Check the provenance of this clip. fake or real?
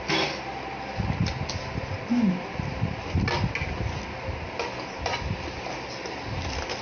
real